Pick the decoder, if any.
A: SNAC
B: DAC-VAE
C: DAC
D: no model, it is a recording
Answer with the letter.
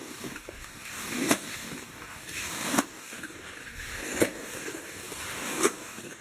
C